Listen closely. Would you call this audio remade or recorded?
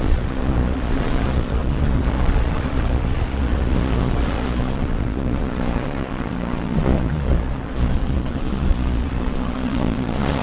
remade